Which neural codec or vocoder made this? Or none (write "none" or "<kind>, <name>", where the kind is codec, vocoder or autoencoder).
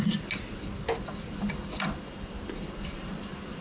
none